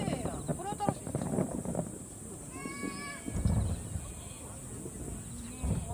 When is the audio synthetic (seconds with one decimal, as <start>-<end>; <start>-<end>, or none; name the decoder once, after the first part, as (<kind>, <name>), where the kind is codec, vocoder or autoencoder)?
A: 0.0-0.5 (vocoder, BigVGAN v2); 1.0-2.8